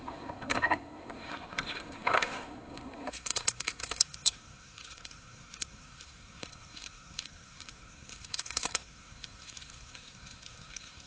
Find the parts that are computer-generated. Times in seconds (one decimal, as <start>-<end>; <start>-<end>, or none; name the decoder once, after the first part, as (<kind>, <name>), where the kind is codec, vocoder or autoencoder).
0.0-11.1 (codec, SNAC)